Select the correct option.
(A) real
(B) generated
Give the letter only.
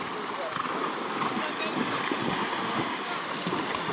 A